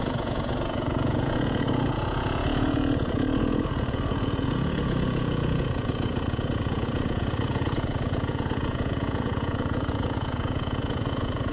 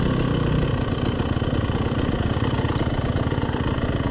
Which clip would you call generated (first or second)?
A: first